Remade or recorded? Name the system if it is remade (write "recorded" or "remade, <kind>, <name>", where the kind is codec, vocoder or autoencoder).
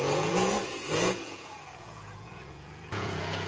remade, vocoder, Vocos